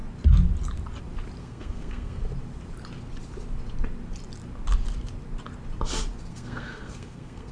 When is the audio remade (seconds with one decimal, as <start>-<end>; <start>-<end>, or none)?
1.4-2.2; 6.3-7.5